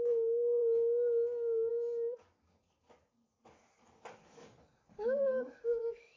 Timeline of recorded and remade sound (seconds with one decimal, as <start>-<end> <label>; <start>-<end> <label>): 0.0-0.6 remade; 0.6-1.7 recorded; 1.7-6.2 remade